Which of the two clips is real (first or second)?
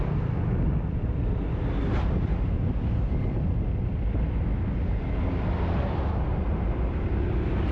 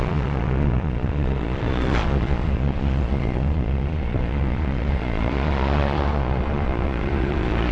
first